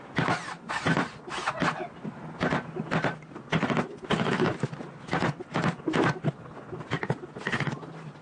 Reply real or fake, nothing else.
real